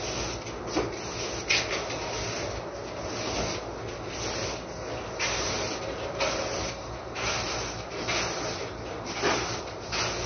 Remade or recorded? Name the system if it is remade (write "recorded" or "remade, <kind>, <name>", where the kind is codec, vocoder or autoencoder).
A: recorded